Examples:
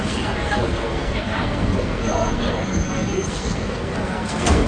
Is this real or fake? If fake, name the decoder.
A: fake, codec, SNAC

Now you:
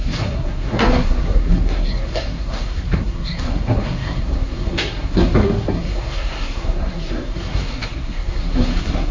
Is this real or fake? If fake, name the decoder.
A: fake, codec, SNAC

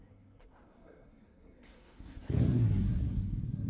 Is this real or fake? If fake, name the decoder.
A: fake, codec, SNAC